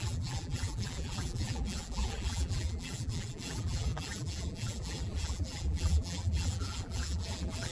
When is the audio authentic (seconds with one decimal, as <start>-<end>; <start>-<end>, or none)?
none